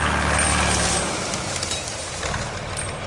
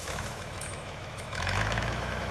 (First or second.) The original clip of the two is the first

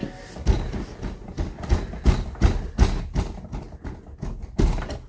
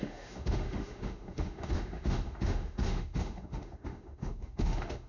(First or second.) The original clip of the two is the first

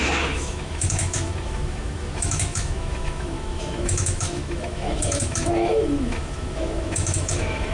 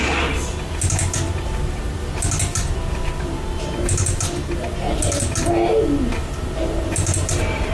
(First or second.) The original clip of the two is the second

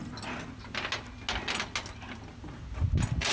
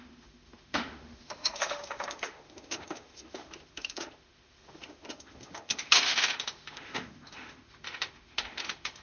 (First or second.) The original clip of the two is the first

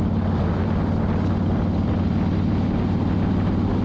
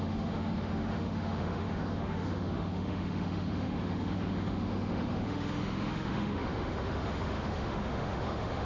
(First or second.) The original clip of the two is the first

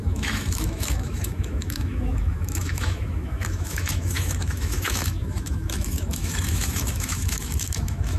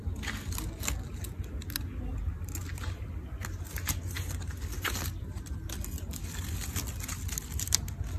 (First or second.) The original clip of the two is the second